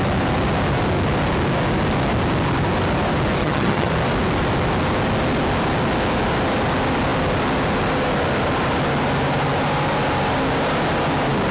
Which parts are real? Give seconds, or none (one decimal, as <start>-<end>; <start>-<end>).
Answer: 0.0-3.4; 3.9-11.5